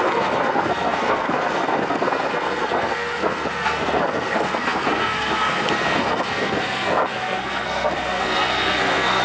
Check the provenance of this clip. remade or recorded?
remade